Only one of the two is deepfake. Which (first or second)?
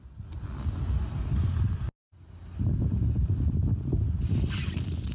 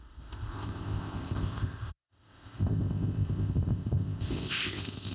second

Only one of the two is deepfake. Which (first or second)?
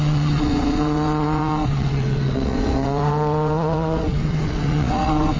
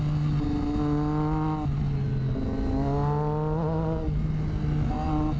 first